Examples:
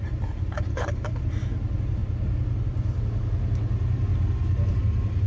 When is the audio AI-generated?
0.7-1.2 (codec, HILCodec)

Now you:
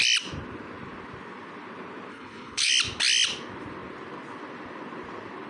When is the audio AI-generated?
2.1-2.7 (codec, HILCodec)

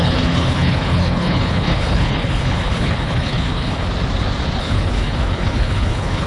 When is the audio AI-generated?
0.0-3.9 (codec, HILCodec); 4.6-6.3

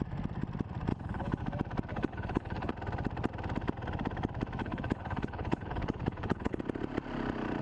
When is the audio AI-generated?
0.9-1.4 (codec, HILCodec); 1.9-2.7; 4.6-6.6